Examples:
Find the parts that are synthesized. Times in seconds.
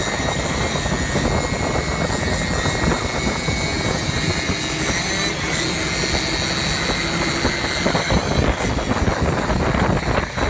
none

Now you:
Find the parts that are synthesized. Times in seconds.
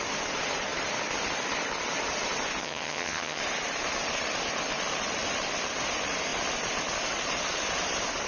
2.6-3.4 (vocoder, HiFi-GAN)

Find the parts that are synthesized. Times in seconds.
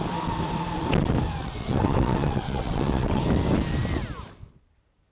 1.4-3.2 (vocoder, WaveNeXt)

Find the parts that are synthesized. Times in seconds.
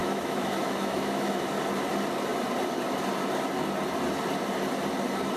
0.0-1.5 (autoencoder, DAC-VAE)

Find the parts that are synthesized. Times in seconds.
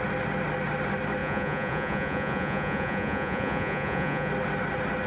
1.2-4.3 (vocoder, Vocos)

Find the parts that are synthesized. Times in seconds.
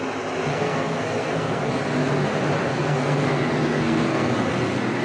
0.5-1.7 (codec, SNAC); 2.7-4.3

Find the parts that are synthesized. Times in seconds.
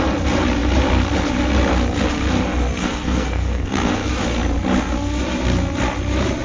2.8-4.1 (codec, SNAC)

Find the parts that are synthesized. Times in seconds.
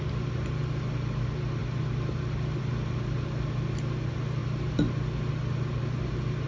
none